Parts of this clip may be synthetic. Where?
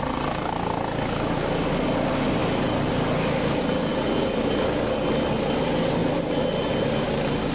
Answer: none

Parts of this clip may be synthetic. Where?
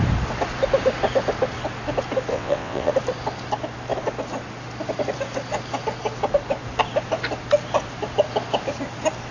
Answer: 2.3-2.9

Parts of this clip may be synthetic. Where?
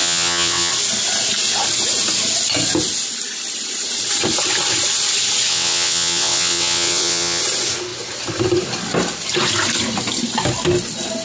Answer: 0.0-0.7; 5.5-7.4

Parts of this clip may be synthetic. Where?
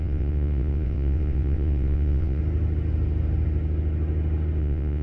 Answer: 0.0-2.4; 4.6-5.0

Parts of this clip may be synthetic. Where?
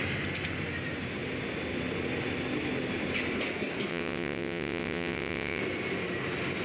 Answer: 3.9-5.6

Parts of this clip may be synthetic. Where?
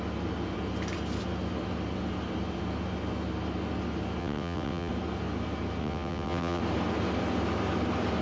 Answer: 4.2-4.9; 5.8-6.6